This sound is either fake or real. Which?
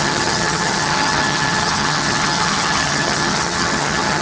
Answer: fake